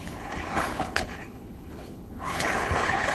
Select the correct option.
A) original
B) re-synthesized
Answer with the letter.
B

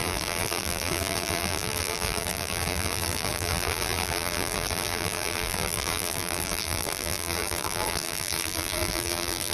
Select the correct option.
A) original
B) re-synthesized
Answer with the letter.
B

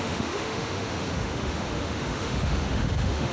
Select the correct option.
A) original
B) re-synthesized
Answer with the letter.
B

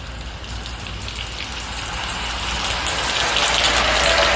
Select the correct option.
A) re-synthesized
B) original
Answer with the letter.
B